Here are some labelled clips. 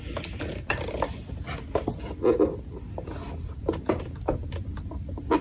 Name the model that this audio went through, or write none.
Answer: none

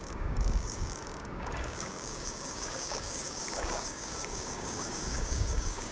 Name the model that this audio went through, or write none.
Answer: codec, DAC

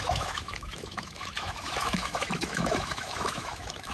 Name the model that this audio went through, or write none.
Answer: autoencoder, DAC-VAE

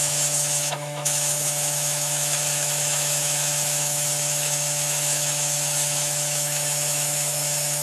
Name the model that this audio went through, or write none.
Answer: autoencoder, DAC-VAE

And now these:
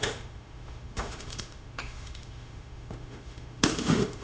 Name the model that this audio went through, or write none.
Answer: autoencoder, DAC-VAE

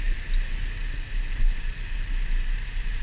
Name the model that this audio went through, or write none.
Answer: none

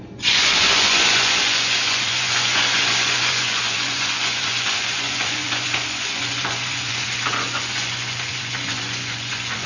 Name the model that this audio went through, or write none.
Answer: vocoder, Vocos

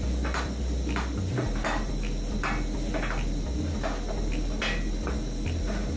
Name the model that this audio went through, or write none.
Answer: none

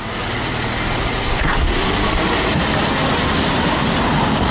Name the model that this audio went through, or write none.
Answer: none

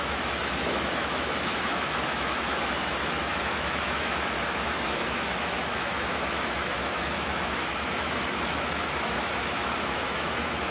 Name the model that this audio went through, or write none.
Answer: autoencoder, DAC-VAE